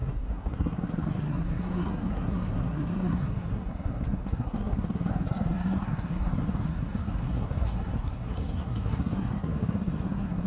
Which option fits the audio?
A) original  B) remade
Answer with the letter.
B